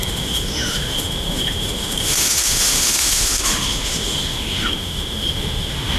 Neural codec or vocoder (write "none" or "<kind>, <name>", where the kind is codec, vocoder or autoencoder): autoencoder, DAC-VAE